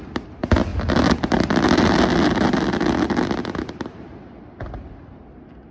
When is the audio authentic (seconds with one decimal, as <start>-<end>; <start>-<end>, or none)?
0.0-5.7